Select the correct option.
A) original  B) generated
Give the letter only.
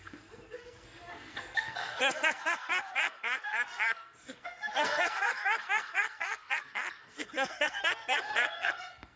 B